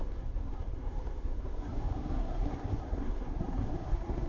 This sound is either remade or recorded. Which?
remade